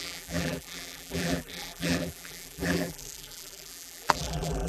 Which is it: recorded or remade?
remade